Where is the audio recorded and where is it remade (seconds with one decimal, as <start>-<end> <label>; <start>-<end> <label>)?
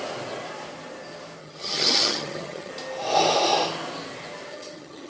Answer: 0.0-1.4 recorded; 1.4-2.7 remade; 2.7-4.5 recorded; 4.5-5.1 remade